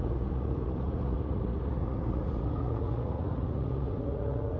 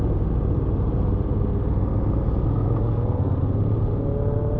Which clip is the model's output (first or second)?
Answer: first